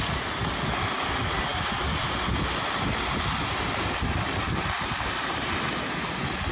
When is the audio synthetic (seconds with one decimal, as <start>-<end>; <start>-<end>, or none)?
none